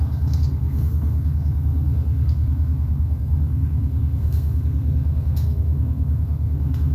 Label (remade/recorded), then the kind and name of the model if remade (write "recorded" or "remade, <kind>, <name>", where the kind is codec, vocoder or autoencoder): remade, codec, SNAC